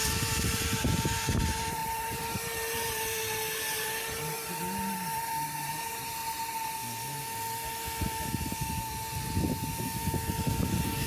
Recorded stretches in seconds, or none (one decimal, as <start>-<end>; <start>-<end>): 6.2-10.3